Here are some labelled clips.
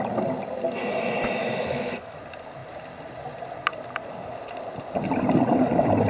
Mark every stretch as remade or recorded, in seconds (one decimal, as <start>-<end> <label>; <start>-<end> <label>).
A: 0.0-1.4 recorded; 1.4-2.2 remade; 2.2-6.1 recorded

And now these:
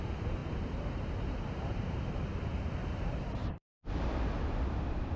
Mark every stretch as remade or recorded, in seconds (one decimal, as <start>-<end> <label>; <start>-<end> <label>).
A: 0.0-5.2 remade

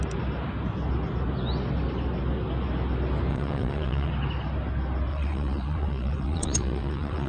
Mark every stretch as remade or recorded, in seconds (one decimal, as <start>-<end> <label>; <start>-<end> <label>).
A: 0.0-3.3 recorded; 3.3-4.1 remade; 4.1-5.1 recorded; 5.1-7.3 remade

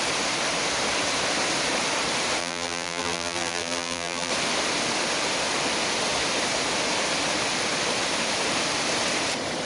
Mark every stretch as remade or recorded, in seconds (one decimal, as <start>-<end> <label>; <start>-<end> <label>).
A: 0.0-2.4 recorded; 2.4-4.3 remade; 4.3-9.7 recorded